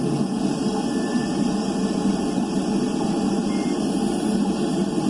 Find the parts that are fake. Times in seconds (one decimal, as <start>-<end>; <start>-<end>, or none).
none